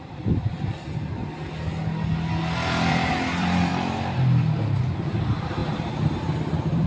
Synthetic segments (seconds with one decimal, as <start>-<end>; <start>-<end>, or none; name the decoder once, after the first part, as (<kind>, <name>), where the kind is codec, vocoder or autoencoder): 0.0-1.2 (vocoder, BigVGAN v2); 2.9-3.7; 4.8-5.6